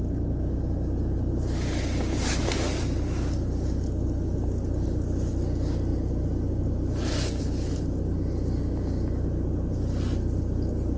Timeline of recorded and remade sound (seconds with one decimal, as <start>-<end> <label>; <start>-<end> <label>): 0.0-11.0 recorded